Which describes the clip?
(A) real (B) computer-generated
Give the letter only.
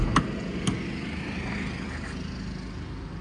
A